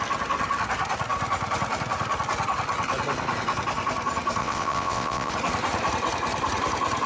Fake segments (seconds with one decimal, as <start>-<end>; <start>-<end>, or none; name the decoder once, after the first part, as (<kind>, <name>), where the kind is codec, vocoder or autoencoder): 4.4-5.3 (vocoder, WaveNeXt)